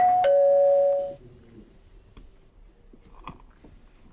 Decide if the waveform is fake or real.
real